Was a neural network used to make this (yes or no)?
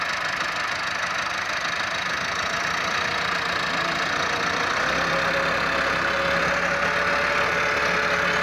no